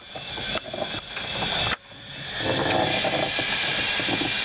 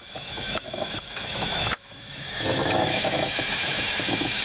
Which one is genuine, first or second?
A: first